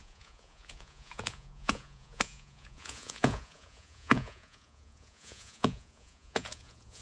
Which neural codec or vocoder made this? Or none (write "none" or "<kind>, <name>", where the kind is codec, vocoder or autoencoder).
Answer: vocoder, Vocos